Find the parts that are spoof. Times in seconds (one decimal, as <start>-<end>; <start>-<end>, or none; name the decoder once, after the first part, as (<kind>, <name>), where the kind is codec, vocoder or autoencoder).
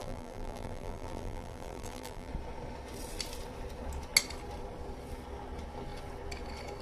0.0-2.3 (vocoder, BigVGAN v2)